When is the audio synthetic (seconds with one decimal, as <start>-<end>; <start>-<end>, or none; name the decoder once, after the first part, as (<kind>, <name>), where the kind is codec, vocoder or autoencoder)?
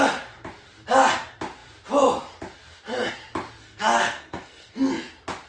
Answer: 3.6-4.9 (codec, SNAC)